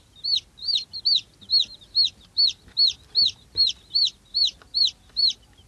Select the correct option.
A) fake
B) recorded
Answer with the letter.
B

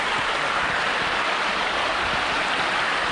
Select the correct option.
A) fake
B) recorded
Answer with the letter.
B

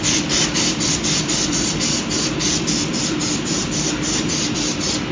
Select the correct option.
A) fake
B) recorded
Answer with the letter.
B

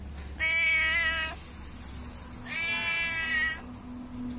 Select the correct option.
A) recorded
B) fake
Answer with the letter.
A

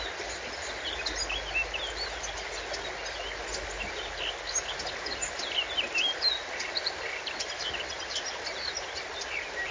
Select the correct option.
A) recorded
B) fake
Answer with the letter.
A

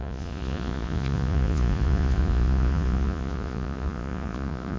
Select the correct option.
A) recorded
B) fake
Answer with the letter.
B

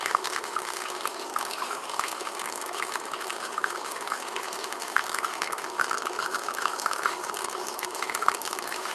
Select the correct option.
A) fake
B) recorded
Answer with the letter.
A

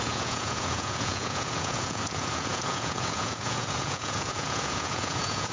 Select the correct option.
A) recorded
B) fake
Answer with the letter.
B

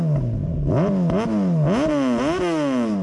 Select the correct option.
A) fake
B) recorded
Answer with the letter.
B